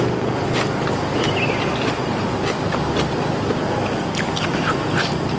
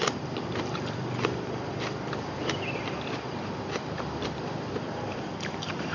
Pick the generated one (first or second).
second